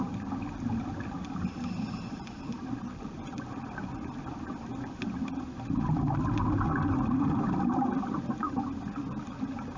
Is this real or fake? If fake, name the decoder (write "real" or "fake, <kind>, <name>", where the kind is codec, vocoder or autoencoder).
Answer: real